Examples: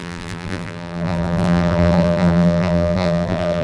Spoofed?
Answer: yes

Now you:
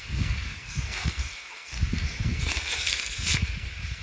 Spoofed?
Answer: yes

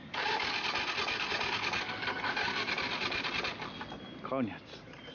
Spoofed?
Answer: no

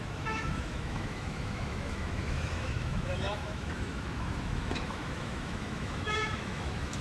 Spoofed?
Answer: yes